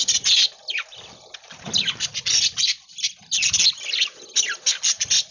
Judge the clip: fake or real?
real